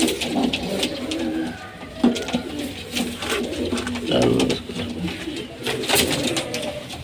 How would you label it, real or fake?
real